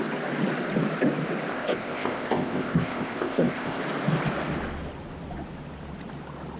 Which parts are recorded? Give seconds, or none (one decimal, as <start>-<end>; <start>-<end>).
0.0-1.5; 3.8-6.6